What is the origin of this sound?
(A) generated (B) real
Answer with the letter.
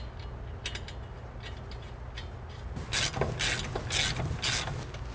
B